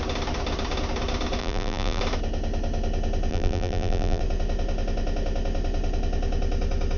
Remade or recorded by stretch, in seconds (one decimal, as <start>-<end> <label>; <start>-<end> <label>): 0.0-1.4 recorded; 1.4-2.0 remade; 2.0-3.3 recorded; 3.3-4.2 remade; 4.2-7.0 recorded